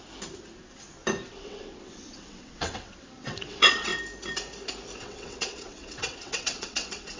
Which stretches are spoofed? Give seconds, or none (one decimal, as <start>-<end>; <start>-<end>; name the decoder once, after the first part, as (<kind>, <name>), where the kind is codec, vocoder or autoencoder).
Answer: 1.3-3.9 (vocoder, WaveNeXt); 5.0-7.2